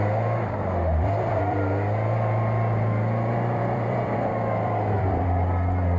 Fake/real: fake